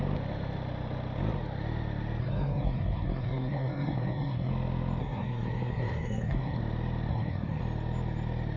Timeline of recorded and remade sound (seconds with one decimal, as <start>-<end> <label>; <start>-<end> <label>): 0.0-2.2 recorded; 2.2-4.5 remade; 4.5-5.0 recorded; 5.0-6.6 remade; 6.6-7.1 recorded; 7.1-7.6 remade; 7.6-8.6 recorded